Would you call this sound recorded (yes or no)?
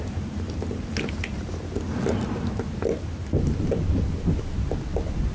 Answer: yes